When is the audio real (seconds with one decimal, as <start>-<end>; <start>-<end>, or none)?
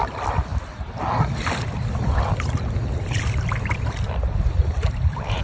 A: none